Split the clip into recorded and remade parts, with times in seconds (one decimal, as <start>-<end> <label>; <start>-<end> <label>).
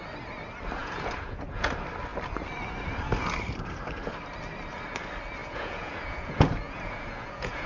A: 0.0-0.8 recorded; 0.8-1.7 remade; 1.7-5.4 recorded; 5.4-7.7 remade